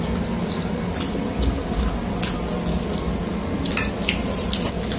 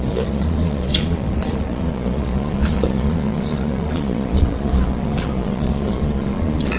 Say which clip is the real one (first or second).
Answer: first